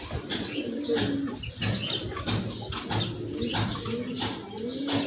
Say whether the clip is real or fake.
real